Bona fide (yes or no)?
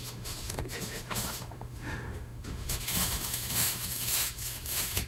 no